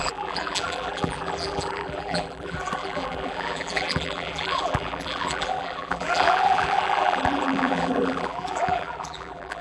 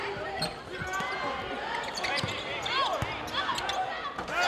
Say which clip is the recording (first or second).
second